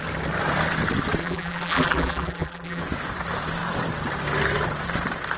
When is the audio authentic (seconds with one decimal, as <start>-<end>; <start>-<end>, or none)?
0.0-1.2; 2.8-5.4